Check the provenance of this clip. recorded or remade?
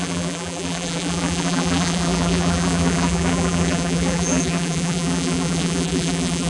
remade